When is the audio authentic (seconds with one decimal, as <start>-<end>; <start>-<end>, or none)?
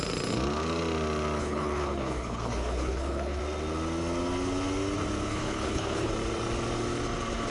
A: 0.0-1.4; 3.4-5.3; 6.1-7.5